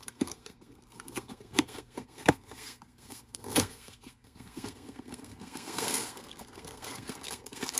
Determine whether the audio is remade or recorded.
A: remade